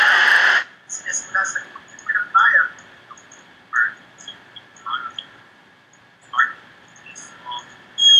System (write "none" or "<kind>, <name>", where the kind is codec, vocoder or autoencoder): none